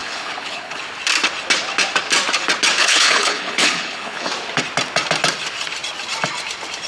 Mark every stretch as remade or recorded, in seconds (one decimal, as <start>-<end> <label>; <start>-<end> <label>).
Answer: 0.0-0.8 remade; 0.8-2.8 recorded; 2.8-4.3 remade; 4.3-6.9 recorded